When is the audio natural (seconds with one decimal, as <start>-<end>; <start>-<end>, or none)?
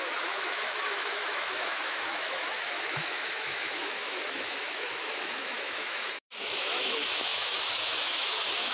none